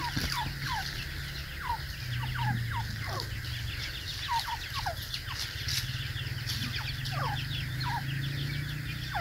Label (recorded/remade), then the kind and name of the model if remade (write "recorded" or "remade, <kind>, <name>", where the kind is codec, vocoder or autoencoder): recorded